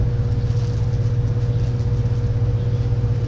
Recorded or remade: recorded